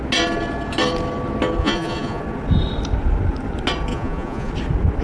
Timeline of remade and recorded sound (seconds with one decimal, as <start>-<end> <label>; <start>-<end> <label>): 0.0-1.6 recorded; 1.6-2.2 remade; 2.2-3.9 recorded; 3.9-4.5 remade; 4.5-5.0 recorded